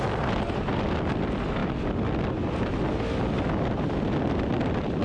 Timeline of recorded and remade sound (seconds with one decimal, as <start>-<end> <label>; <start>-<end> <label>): 0.0-5.0 recorded